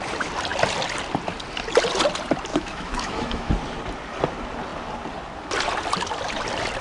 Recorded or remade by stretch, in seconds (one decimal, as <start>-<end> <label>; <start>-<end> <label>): 0.0-2.5 recorded; 2.5-3.5 remade; 3.5-6.8 recorded